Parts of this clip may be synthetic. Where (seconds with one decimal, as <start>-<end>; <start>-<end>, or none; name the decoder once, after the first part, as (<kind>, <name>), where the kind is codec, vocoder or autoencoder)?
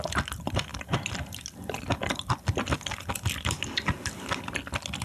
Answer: none